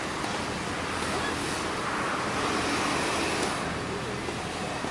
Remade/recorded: recorded